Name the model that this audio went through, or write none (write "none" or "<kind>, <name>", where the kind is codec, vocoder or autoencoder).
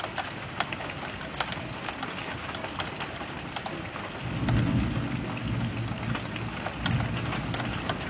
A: none